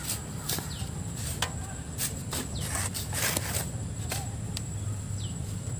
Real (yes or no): yes